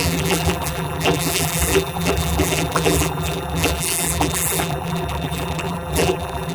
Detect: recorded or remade remade